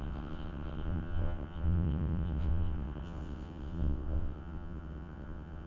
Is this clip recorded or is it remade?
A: remade